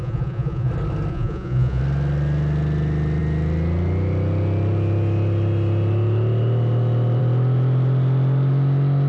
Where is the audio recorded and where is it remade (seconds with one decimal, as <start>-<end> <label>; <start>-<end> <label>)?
0.0-0.7 remade; 0.7-1.1 recorded; 1.1-1.8 remade; 1.8-9.1 recorded